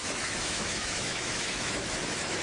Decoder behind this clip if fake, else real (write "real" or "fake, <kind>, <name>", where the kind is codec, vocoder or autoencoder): fake, autoencoder, DAC-VAE